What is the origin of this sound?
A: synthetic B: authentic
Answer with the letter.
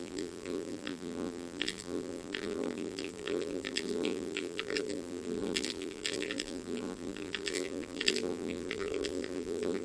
A